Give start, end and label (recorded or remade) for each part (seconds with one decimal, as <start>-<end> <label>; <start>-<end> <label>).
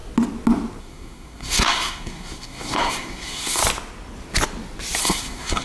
0.0-0.8 recorded; 0.8-3.6 remade; 3.6-5.0 recorded; 5.0-5.6 remade